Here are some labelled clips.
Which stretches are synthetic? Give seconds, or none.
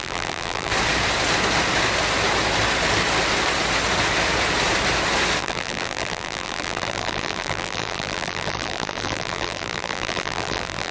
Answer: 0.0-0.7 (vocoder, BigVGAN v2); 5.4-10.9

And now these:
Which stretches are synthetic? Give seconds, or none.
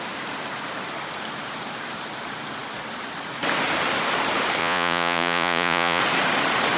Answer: 4.6-6.0 (vocoder, Vocos)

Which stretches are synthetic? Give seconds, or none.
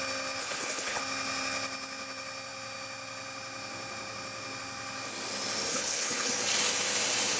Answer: 0.4-1.0 (codec, HILCodec); 5.7-6.3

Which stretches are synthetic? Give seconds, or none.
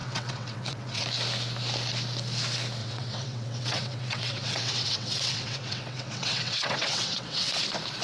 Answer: 0.0-1.0 (vocoder, WaveNeXt); 2.8-7.6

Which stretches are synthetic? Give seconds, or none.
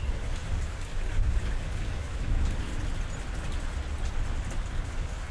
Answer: 0.0-2.7 (codec, DAC); 4.6-5.3